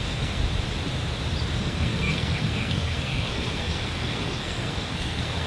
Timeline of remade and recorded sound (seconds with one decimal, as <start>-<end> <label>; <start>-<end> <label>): 0.0-0.4 remade; 0.4-1.6 recorded; 1.6-5.5 remade